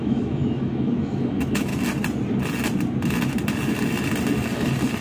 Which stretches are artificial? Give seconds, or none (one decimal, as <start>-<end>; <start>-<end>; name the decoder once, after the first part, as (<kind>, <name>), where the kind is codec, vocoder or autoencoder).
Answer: 0.0-1.7 (autoencoder, DAC-VAE)